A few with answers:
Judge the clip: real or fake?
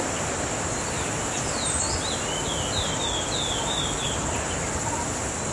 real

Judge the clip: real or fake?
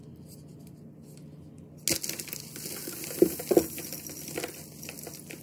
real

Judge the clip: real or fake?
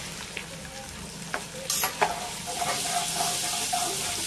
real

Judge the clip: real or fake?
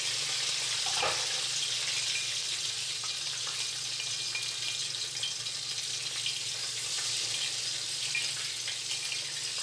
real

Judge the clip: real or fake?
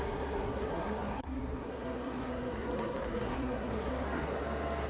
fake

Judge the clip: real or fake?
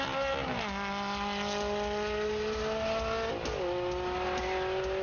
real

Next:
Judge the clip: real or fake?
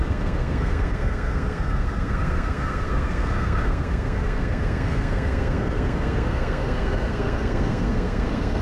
fake